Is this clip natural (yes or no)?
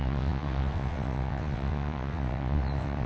no